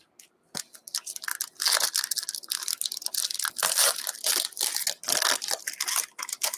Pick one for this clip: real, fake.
real